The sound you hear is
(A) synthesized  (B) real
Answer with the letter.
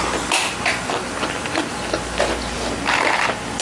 B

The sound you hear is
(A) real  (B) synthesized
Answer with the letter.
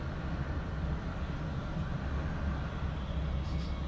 A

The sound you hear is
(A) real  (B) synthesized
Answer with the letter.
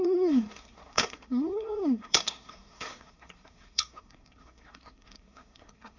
B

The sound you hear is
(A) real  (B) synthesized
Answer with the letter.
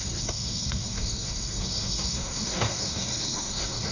B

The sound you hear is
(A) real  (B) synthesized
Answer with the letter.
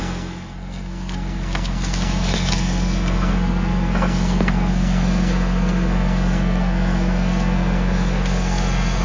B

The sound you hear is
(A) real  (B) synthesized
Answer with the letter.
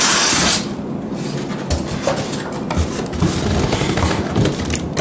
A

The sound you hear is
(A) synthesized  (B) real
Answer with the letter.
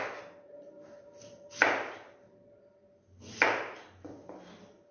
B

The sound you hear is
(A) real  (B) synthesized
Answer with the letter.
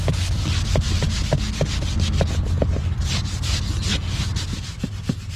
A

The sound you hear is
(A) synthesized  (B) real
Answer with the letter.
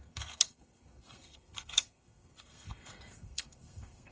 A